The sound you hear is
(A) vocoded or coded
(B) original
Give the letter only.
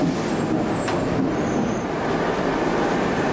B